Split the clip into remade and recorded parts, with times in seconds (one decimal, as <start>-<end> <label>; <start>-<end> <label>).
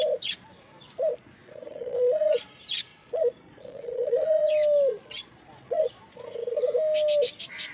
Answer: 0.0-1.4 recorded; 1.4-2.4 remade; 2.4-2.9 recorded; 2.9-4.5 remade; 4.5-4.9 recorded; 4.9-6.0 remade; 6.0-7.7 recorded